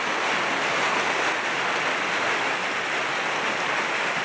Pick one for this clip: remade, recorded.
recorded